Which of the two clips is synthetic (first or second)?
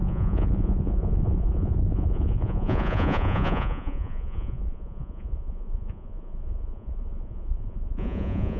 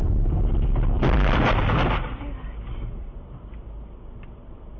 first